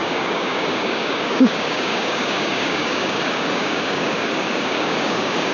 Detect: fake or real fake